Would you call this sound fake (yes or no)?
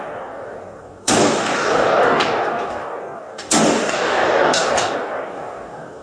yes